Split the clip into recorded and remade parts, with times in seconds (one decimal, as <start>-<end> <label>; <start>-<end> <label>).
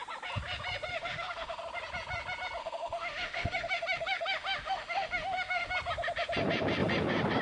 0.0-0.9 recorded; 0.9-1.6 remade; 1.6-2.6 recorded; 2.6-5.7 remade; 5.7-7.4 recorded